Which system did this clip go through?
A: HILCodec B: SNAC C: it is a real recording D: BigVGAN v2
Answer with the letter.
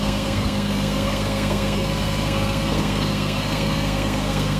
B